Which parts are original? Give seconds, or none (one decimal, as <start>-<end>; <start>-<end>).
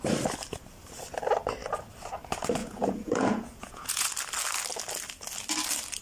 0.0-2.6; 4.1-6.0